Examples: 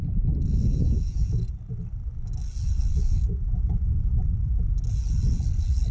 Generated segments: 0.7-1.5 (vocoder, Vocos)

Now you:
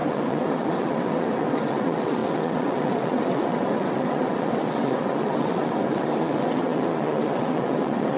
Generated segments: 0.0-8.2 (vocoder, WaveNeXt)

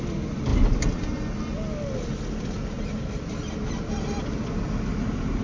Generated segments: none

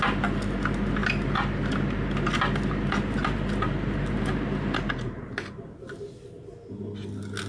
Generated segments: none